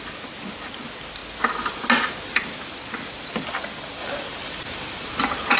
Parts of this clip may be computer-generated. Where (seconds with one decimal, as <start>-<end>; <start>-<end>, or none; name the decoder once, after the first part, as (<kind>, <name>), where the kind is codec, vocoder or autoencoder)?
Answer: 4.0-5.6 (vocoder, BigVGAN v2)